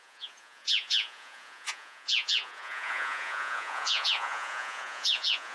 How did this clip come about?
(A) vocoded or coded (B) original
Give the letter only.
A